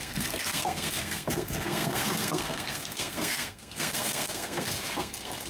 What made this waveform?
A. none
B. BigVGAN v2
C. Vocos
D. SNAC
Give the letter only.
D